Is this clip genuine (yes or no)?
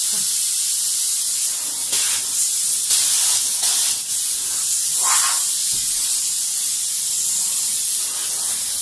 yes